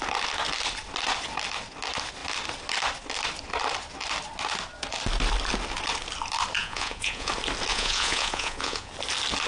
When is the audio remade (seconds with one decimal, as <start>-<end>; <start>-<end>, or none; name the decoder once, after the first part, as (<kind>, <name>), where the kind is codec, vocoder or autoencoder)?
6.6-7.3 (vocoder, Vocos); 7.7-8.9